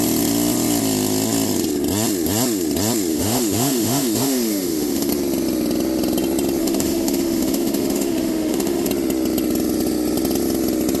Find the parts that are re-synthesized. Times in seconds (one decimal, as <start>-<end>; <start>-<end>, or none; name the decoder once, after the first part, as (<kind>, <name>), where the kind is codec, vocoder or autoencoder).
3.1-5.1 (autoencoder, DAC-VAE); 6.6-8.9